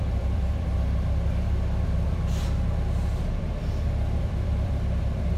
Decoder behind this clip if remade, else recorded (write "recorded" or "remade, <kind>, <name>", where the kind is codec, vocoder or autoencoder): remade, vocoder, BigVGAN v2